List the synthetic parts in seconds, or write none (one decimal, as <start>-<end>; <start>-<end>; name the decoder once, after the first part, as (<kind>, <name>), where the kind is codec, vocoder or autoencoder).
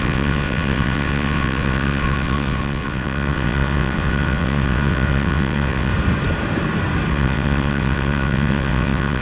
0.0-5.9 (vocoder, WaveNeXt); 7.1-9.2